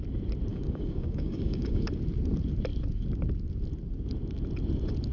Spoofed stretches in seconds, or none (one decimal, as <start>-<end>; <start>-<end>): 0.5-1.9